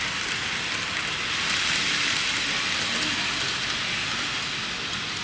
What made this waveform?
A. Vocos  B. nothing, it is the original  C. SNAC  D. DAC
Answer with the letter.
B